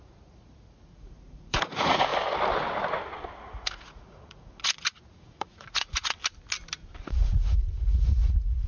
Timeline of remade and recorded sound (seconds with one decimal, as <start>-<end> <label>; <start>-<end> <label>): 0.0-2.1 remade; 2.1-3.4 recorded; 3.4-6.2 remade; 6.2-7.0 recorded; 7.0-8.7 remade

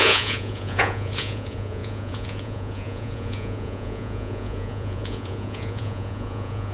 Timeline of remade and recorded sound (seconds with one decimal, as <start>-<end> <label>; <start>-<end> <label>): 0.0-6.7 remade

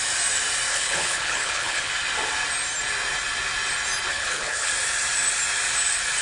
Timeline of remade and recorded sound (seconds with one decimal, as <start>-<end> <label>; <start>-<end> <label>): 0.0-0.7 recorded; 0.7-1.9 remade; 1.9-4.1 recorded; 4.1-4.7 remade; 4.7-6.2 recorded

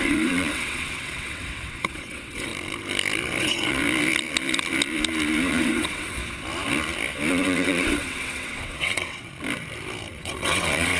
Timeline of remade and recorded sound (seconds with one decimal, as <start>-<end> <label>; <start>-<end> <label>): 0.0-2.5 remade; 2.5-3.4 recorded; 3.4-3.8 remade; 3.8-5.5 recorded; 5.5-6.2 remade; 6.2-7.3 recorded; 7.3-9.3 remade; 9.3-10.1 recorded; 10.1-11.0 remade

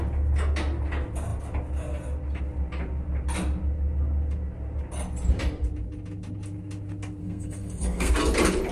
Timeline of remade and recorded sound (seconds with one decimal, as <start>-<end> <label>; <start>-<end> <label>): 0.0-7.2 recorded; 7.2-8.1 remade; 8.1-8.7 recorded

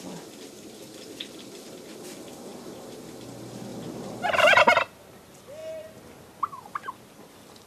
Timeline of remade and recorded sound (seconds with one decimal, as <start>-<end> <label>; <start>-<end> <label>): 0.0-2.5 recorded; 2.5-3.3 remade; 3.3-3.7 recorded; 3.7-4.6 remade; 4.6-7.7 recorded

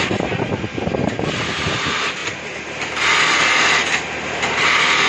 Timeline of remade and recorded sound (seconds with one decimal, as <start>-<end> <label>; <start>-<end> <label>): 0.0-5.1 recorded